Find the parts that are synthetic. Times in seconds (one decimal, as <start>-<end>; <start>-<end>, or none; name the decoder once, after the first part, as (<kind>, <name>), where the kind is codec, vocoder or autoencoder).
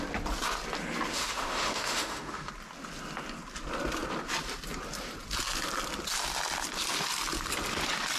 1.1-2.5 (autoencoder, DAC-VAE)